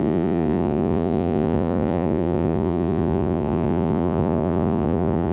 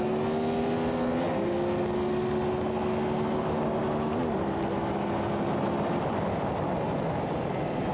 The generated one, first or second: first